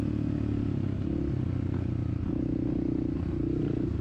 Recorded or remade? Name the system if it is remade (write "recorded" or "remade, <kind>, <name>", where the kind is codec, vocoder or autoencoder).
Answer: recorded